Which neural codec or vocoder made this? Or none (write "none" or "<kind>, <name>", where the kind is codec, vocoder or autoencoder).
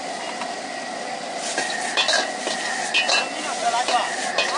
none